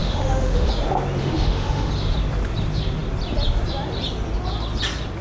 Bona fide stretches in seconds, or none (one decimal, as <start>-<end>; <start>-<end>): 0.7-1.2; 1.9-5.2